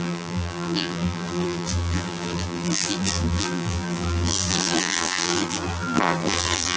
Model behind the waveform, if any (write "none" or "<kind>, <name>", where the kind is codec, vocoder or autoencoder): vocoder, BigVGAN v2